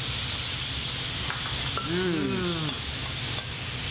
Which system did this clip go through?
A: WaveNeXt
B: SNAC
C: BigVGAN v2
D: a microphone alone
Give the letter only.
D